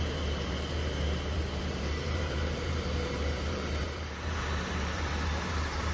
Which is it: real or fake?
fake